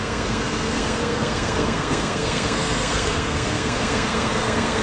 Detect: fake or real fake